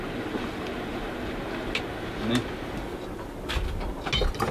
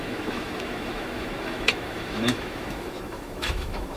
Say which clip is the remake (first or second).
second